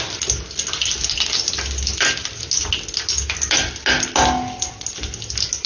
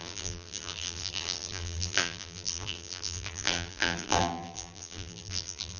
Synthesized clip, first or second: second